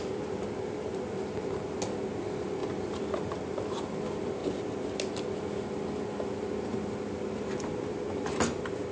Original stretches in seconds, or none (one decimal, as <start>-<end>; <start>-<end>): 0.0-8.9

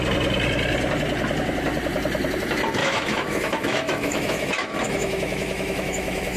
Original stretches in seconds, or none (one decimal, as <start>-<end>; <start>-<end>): 0.0-2.8

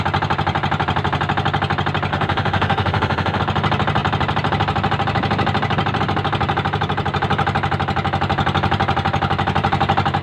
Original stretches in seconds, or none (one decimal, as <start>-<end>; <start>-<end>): 0.0-2.1; 3.4-10.2

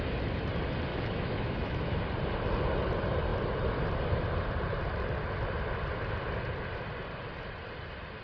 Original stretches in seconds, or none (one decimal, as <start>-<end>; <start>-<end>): 0.0-0.9; 2.0-8.2